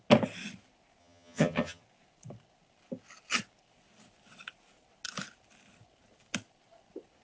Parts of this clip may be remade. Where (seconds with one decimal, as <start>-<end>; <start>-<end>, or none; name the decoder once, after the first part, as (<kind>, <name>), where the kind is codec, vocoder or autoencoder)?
1.0-1.8 (vocoder, HiFi-GAN)